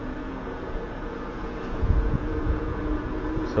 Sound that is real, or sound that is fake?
fake